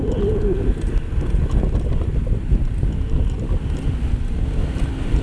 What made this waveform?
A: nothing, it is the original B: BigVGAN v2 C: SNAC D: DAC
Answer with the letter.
A